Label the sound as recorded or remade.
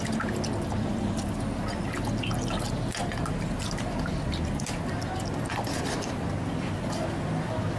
recorded